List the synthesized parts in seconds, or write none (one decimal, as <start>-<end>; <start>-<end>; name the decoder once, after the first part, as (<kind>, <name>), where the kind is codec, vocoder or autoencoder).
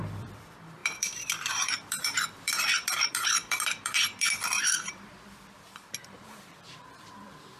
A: 0.0-7.6 (vocoder, BigVGAN v2)